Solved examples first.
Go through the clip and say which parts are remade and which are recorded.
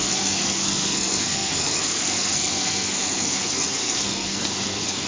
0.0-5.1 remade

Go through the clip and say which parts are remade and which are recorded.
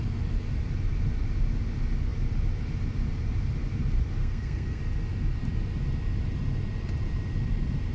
0.0-4.2 recorded; 4.2-4.8 remade; 4.8-7.9 recorded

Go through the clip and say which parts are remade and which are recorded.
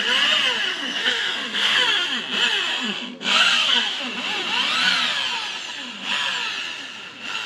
0.0-0.7 recorded; 0.7-2.2 remade; 2.2-2.7 recorded; 2.7-4.0 remade; 4.0-7.5 recorded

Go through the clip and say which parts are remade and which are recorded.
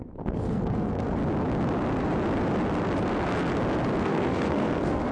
0.0-1.2 remade; 1.2-4.0 recorded; 4.0-5.1 remade